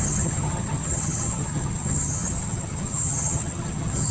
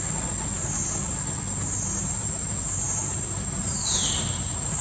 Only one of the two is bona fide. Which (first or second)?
second